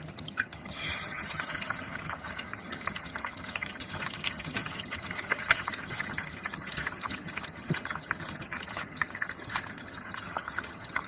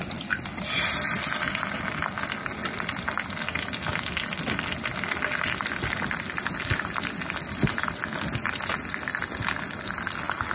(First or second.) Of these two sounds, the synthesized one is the first